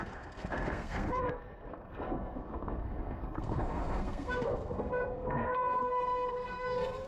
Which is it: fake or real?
fake